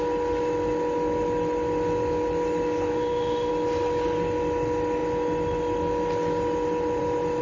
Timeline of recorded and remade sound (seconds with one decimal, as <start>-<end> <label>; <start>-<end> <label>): 0.0-2.9 recorded; 2.9-3.5 remade; 3.5-7.4 recorded